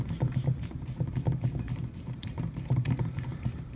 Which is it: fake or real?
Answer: fake